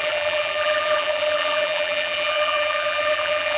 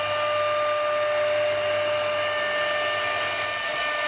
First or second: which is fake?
first